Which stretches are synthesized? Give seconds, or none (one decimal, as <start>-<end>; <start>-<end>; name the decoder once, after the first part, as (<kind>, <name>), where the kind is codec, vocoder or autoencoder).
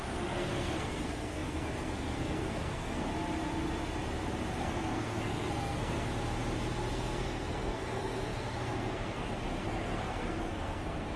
0.0-3.1 (codec, SNAC); 4.6-6.1; 6.9-11.2